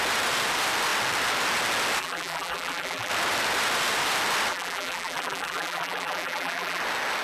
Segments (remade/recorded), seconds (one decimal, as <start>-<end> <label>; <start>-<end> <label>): 0.0-2.0 recorded; 2.0-3.1 remade; 3.1-4.5 recorded; 4.5-6.8 remade; 6.8-7.2 recorded